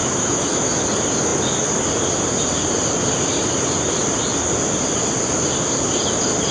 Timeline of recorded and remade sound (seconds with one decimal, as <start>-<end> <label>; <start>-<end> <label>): 0.0-0.8 remade; 0.8-6.5 recorded